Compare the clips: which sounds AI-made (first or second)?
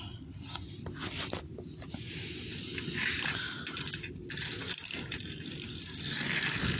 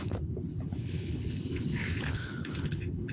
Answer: second